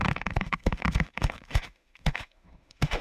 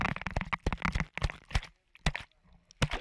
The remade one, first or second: first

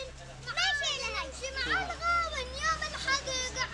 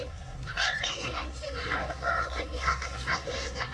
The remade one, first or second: second